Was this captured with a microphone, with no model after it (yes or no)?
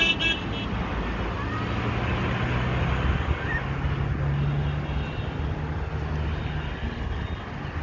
yes